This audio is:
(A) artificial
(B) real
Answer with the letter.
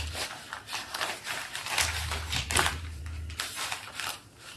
A